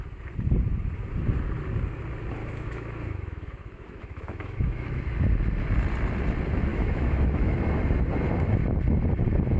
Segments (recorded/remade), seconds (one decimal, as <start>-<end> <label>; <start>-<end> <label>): 0.0-2.4 recorded; 2.4-5.0 remade; 5.0-6.7 recorded; 6.7-7.5 remade; 7.5-9.6 recorded